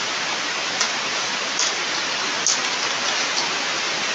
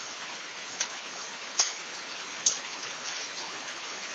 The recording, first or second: first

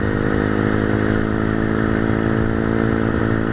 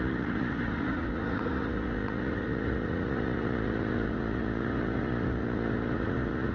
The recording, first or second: first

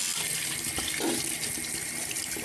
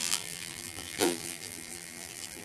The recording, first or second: first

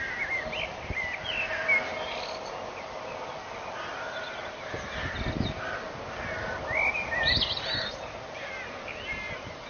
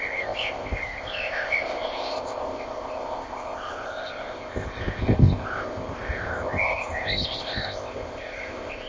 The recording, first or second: first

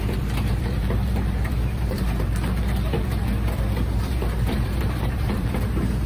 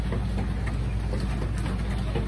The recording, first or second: second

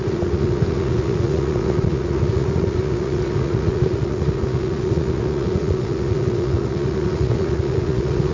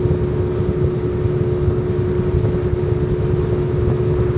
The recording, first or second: second